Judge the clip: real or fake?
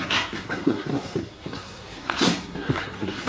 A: fake